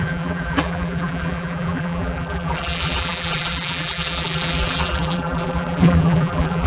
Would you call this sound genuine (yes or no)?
no